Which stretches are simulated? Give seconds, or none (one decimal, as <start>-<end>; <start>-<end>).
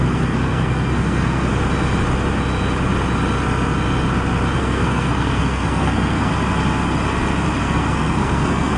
0.0-1.5; 4.6-6.3; 7.6-8.8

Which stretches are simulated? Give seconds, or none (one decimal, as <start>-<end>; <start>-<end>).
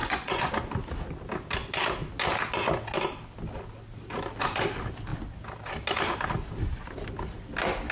0.0-0.5